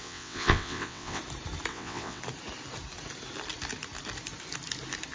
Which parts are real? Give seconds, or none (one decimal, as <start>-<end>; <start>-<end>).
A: 1.2-1.7; 2.2-5.1

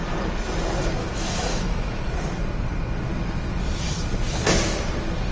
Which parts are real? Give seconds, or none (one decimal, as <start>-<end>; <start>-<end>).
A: 0.0-1.0; 2.0-5.3

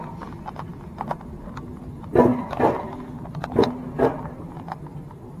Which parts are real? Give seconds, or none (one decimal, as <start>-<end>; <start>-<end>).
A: 0.0-5.4

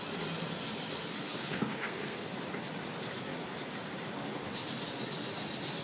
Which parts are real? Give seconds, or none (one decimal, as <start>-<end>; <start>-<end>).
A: 0.0-1.0; 2.3-5.8

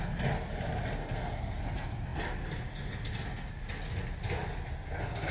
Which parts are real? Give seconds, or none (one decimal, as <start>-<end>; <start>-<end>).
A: 0.0-1.0; 1.6-5.3

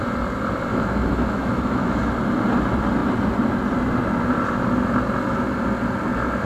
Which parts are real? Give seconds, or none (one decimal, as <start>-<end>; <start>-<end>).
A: 0.0-0.7; 2.1-6.4

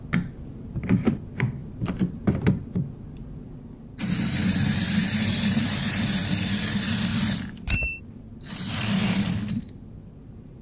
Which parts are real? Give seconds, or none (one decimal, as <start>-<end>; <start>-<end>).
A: 0.0-1.6; 2.5-5.0; 6.0-7.1; 10.1-10.6